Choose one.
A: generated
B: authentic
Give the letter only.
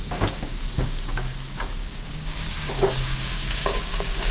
A